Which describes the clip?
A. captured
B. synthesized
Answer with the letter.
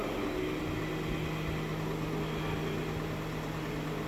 A